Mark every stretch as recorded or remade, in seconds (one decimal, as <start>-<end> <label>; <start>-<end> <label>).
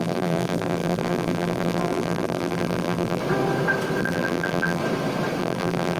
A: 0.0-3.2 remade; 3.2-4.0 recorded; 4.0-4.8 remade; 4.8-5.4 recorded; 5.4-6.0 remade